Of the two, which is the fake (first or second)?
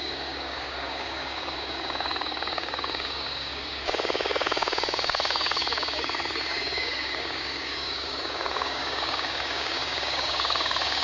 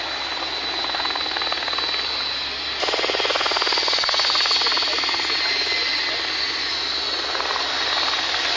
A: first